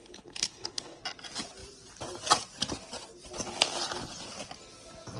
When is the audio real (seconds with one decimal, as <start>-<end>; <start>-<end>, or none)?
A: 1.0-5.2

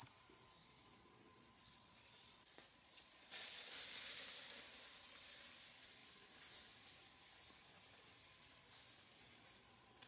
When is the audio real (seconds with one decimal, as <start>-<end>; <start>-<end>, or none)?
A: 0.0-0.6; 3.8-9.2

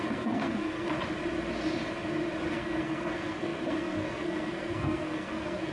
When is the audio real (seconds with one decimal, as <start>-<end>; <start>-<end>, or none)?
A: 0.9-2.5

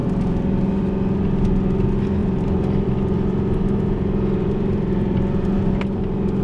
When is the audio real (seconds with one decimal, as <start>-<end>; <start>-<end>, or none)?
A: 0.0-2.2; 6.0-6.4

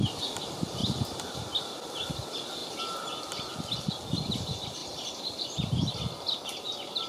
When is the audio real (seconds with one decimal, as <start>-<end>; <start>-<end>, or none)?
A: 0.0-0.8; 1.4-2.6; 3.5-4.8; 5.9-7.1

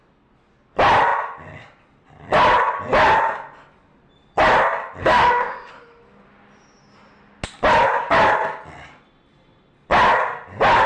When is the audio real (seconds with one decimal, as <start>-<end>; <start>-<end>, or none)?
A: 0.0-5.0; 5.7-10.9

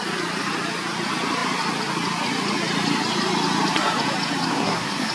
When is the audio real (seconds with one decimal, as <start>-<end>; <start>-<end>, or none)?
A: 0.0-4.5

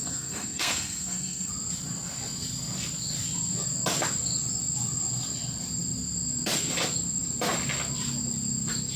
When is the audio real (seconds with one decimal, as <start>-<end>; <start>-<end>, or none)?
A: 1.5-9.0